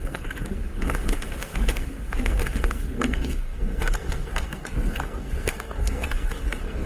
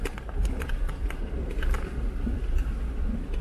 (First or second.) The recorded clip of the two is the second